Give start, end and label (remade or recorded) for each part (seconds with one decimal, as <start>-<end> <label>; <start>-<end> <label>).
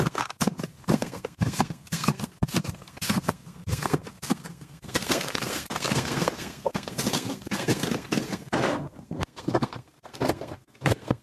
0.0-11.2 remade